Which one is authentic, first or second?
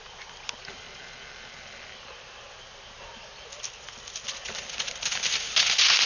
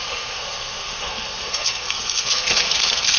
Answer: first